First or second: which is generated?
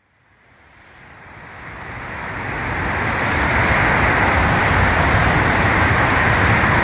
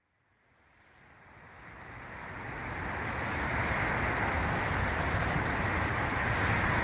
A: first